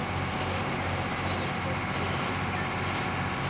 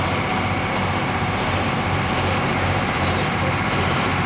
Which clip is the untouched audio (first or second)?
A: first